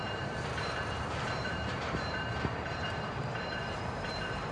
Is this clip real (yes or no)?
no